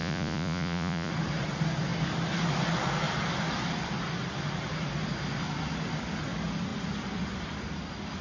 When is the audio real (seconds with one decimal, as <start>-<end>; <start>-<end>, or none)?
1.1-8.2